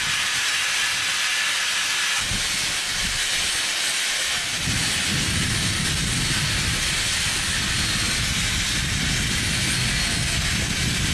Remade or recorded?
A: recorded